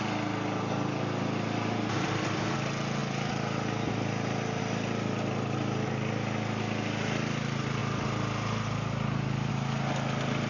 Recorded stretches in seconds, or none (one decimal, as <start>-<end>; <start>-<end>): 0.0-10.5